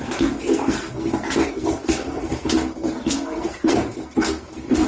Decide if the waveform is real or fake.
fake